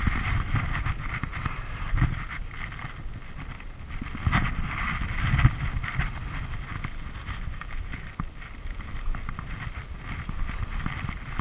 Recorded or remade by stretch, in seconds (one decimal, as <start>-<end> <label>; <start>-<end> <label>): 0.0-11.4 recorded